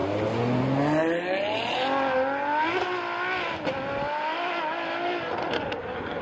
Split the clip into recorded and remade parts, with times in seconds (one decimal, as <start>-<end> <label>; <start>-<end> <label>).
0.0-6.2 recorded